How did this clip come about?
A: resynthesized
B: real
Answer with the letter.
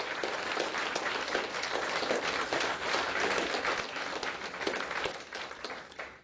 B